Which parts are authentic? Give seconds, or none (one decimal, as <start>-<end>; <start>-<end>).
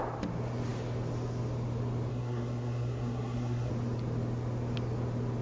0.0-2.1; 3.7-5.4